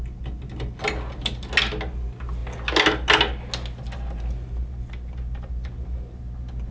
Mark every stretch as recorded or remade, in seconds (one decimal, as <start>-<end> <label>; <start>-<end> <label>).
0.0-6.7 recorded

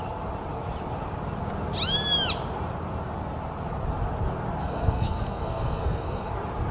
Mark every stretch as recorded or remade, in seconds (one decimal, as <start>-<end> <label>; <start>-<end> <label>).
0.0-4.6 recorded; 4.6-6.3 remade; 6.3-6.7 recorded

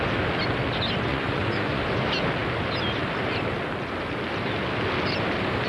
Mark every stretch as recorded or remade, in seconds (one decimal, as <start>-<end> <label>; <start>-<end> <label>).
0.0-1.1 recorded; 1.1-1.8 remade; 1.8-5.7 recorded